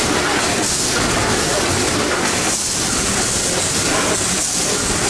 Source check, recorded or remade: recorded